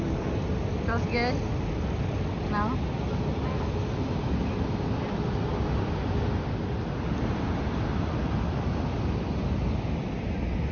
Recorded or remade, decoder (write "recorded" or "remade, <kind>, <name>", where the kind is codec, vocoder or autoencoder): recorded